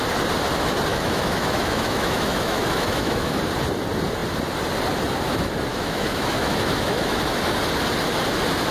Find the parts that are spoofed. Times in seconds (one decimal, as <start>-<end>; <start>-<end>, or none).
0.9-3.4; 5.7-7.2